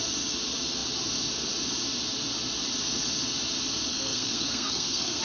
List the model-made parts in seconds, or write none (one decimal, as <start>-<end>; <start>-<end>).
3.9-5.2